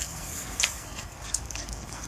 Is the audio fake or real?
fake